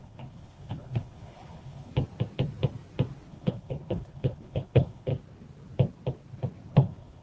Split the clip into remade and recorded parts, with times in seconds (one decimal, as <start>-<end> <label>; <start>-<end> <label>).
0.0-1.9 remade; 1.9-3.3 recorded; 3.3-5.1 remade; 5.1-6.7 recorded; 6.7-7.2 remade